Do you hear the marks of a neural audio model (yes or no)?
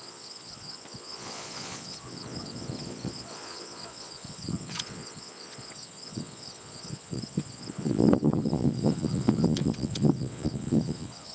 yes